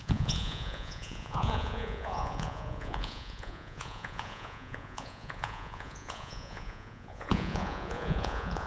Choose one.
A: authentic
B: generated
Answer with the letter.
B